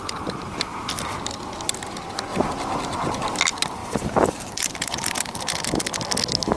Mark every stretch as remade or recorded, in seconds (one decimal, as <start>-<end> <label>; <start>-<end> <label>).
0.0-3.8 recorded; 3.8-5.4 remade; 5.4-6.6 recorded